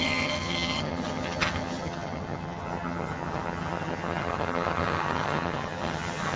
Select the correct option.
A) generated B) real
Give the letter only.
A